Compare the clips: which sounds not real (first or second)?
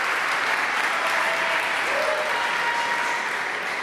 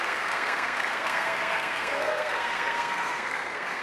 second